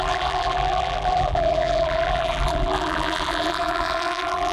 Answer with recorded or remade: remade